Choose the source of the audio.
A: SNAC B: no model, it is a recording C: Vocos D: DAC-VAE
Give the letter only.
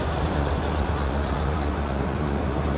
C